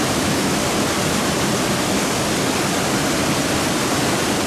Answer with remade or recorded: recorded